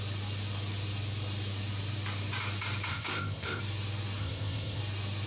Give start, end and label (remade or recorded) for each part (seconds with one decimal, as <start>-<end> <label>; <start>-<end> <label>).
0.0-2.9 recorded; 2.9-3.6 remade; 3.6-4.2 recorded; 4.2-4.8 remade; 4.8-5.3 recorded